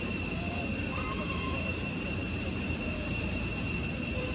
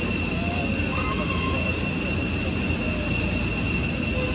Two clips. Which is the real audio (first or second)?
second